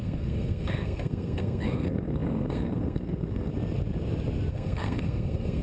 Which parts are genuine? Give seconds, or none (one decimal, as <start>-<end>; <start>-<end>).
3.5-4.5